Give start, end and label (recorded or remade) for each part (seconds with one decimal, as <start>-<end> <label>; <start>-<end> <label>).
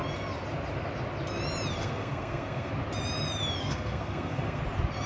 0.0-1.8 recorded; 1.8-2.7 remade; 2.7-3.6 recorded; 3.6-4.6 remade; 4.6-5.1 recorded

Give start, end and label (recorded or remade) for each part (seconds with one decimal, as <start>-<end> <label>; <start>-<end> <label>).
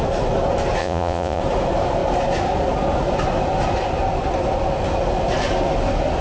0.0-0.8 recorded; 0.8-1.4 remade; 1.4-6.2 recorded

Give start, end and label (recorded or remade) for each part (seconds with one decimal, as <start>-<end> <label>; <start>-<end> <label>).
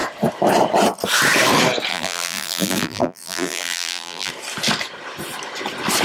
0.0-1.9 recorded; 1.9-4.3 remade; 4.3-6.0 recorded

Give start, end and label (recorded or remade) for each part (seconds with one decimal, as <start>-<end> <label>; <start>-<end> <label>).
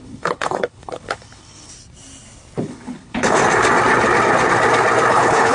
0.0-1.7 remade; 1.7-2.6 recorded; 2.6-3.4 remade; 3.4-5.1 recorded; 5.1-5.5 remade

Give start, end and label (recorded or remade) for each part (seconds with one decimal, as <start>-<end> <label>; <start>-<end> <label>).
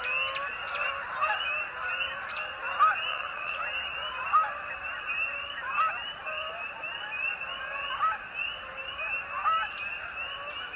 0.0-3.1 recorded; 3.1-3.6 remade; 3.6-10.8 recorded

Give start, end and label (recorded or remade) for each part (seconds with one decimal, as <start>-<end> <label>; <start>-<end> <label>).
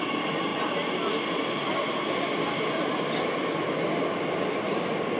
0.0-5.2 recorded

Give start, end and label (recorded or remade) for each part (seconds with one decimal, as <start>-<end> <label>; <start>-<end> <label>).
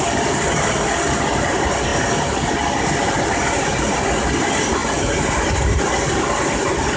0.0-7.0 recorded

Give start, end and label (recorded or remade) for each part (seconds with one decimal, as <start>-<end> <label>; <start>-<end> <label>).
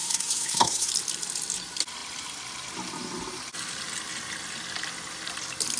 0.0-0.9 remade; 0.9-5.8 recorded